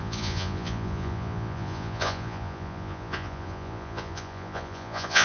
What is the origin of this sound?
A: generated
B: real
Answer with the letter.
A